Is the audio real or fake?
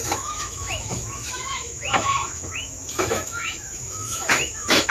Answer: fake